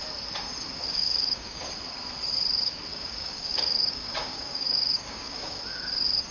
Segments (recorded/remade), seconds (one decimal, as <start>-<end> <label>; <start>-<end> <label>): 0.0-0.9 recorded; 0.9-1.6 remade; 1.6-2.9 recorded; 2.9-5.6 remade; 5.6-6.3 recorded